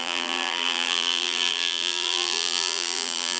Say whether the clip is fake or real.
fake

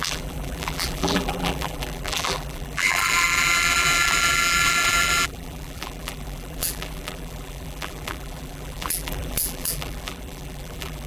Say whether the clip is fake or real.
fake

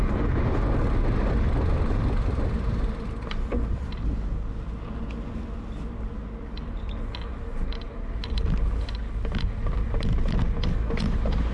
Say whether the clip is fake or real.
real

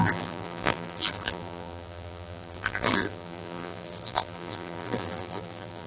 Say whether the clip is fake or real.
fake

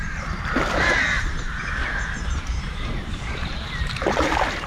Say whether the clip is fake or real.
fake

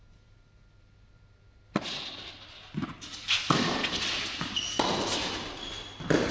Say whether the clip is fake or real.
real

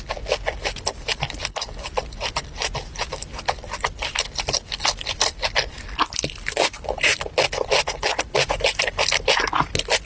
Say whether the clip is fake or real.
real